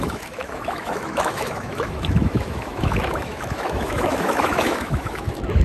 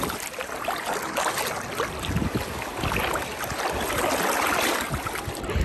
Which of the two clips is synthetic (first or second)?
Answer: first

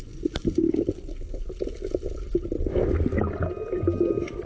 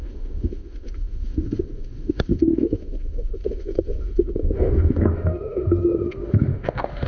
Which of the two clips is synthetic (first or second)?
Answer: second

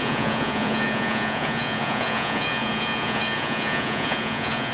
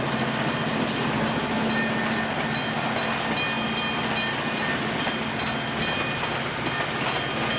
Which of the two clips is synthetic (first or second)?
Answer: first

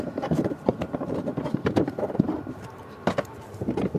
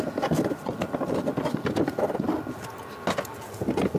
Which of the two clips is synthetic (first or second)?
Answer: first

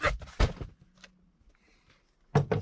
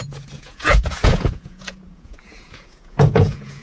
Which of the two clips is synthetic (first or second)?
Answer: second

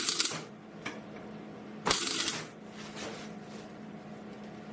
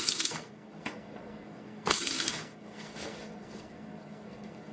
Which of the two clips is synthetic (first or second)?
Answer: second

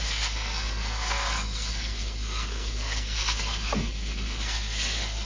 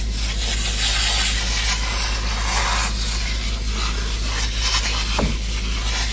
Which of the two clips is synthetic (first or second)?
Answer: first